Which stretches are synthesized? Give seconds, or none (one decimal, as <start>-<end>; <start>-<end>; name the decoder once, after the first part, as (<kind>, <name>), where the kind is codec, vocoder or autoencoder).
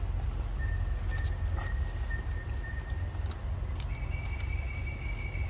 none